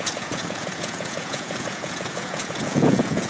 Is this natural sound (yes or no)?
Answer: no